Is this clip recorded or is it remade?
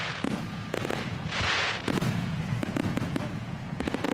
remade